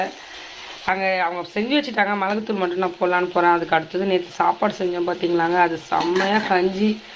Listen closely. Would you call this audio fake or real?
real